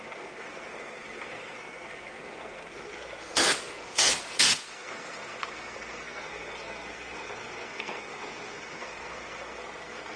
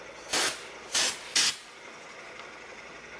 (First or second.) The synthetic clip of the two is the first